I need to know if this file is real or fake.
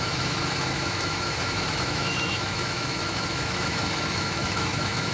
fake